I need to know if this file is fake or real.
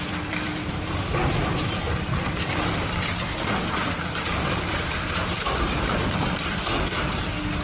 fake